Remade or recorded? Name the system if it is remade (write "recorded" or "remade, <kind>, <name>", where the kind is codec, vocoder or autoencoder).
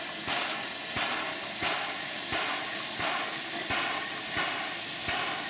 recorded